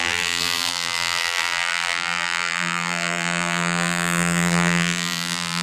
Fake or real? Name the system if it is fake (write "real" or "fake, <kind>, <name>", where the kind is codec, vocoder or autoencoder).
fake, vocoder, BigVGAN v2